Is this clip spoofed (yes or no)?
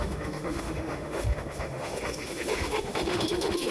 yes